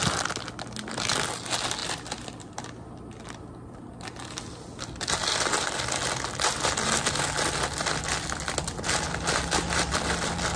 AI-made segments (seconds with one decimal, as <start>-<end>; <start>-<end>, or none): none